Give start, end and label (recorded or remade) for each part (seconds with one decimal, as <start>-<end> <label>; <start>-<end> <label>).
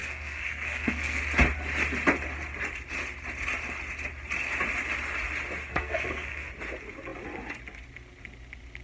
0.0-1.2 remade; 1.2-5.7 recorded; 5.7-6.5 remade; 6.5-8.8 recorded